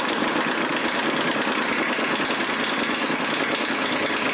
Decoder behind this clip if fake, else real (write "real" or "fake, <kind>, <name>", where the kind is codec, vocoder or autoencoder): real